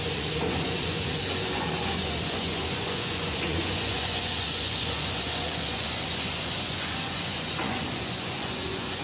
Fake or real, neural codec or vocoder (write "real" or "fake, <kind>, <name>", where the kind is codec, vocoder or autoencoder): fake, vocoder, Vocos